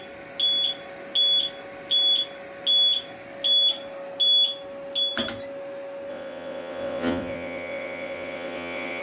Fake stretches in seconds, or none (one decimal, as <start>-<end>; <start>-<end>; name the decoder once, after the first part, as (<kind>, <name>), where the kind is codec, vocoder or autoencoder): 6.1-9.0 (vocoder, WaveNeXt)